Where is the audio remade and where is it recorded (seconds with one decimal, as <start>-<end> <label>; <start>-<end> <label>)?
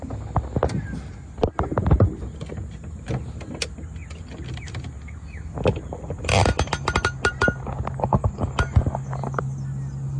0.0-10.2 recorded